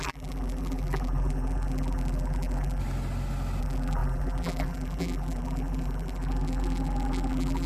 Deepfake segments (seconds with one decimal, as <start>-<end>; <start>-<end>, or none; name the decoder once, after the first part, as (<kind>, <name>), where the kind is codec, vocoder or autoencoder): 0.0-2.8 (vocoder, BigVGAN v2); 3.6-7.7